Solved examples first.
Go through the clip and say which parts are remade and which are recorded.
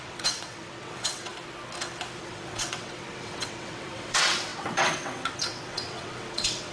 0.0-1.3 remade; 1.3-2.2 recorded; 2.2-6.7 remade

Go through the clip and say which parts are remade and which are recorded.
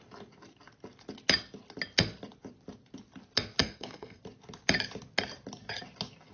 0.0-3.6 recorded; 3.6-4.2 remade; 4.2-6.3 recorded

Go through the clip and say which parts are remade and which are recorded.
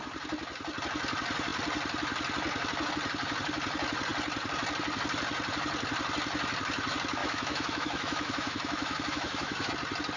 0.0-7.2 recorded; 7.2-9.7 remade; 9.7-10.2 recorded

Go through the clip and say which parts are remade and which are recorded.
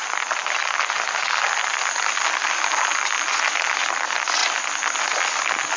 0.0-5.8 recorded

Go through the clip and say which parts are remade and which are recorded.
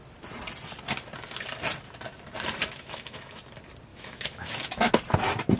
0.0-2.6 recorded; 2.6-3.4 remade; 3.4-3.9 recorded; 3.9-4.9 remade; 4.9-5.6 recorded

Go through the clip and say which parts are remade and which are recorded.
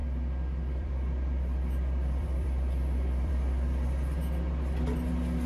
0.0-3.3 remade; 3.3-5.5 recorded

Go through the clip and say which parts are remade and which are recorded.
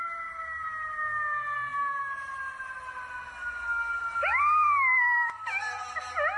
0.0-1.7 recorded; 1.7-2.7 remade; 2.7-6.4 recorded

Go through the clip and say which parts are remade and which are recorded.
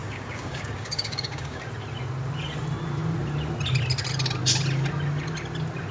0.0-1.6 remade; 1.6-5.9 recorded